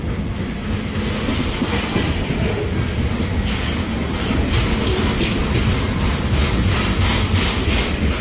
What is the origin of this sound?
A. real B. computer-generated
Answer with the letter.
A